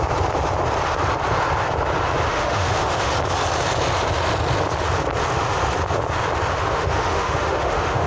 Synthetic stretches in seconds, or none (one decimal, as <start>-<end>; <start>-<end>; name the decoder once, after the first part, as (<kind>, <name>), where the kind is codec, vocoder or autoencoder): 2.3-3.1 (autoencoder, DAC-VAE); 6.7-8.1